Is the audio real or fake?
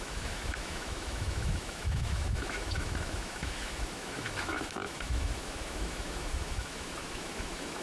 fake